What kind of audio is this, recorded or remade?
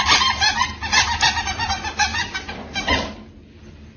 recorded